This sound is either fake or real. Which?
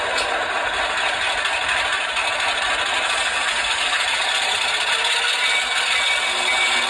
real